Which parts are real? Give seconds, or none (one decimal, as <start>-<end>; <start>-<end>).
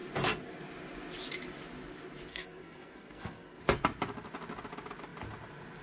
0.0-2.3; 3.6-5.8